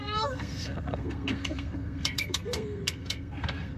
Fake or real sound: fake